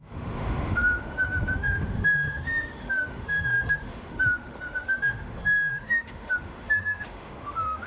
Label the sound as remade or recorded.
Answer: remade